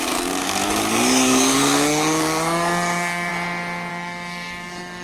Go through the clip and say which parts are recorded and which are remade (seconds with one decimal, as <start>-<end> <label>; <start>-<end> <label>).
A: 0.0-3.3 remade; 3.3-3.9 recorded; 3.9-5.0 remade